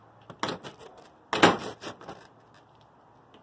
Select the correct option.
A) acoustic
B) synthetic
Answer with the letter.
A